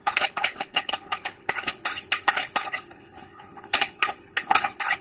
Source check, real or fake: fake